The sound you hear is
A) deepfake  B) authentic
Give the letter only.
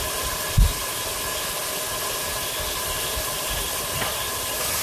B